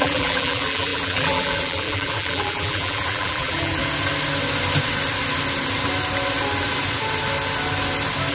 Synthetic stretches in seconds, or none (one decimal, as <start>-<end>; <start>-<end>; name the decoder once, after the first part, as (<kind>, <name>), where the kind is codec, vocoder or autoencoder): 0.0-3.8 (vocoder, BigVGAN v2)